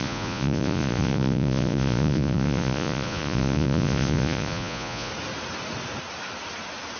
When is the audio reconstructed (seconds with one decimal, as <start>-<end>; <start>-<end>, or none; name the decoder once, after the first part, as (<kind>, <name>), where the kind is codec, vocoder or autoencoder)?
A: 0.0-5.1 (vocoder, Vocos)